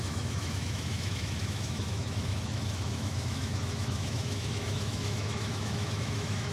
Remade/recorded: remade